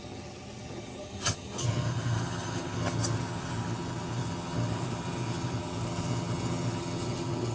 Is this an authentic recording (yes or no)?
no